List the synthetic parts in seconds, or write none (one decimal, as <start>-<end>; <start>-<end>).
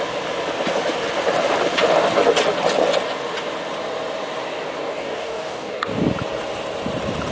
4.8-6.0